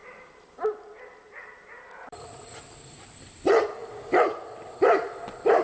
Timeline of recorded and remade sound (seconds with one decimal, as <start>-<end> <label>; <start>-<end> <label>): 0.0-3.4 remade; 3.4-3.8 recorded; 3.8-4.4 remade; 4.4-5.6 recorded